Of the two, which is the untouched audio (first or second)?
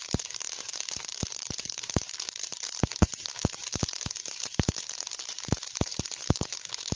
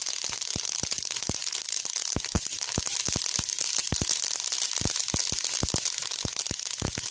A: second